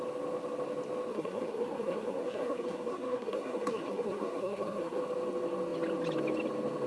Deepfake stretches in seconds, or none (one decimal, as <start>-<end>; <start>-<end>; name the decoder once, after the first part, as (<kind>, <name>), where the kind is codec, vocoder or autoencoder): 1.1-5.0 (codec, SNAC)